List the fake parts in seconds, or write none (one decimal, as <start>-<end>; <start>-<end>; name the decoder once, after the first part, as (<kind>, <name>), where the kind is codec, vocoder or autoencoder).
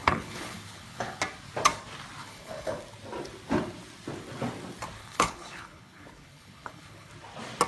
0.0-1.2 (codec, HILCodec); 2.2-2.8; 5.0-7.1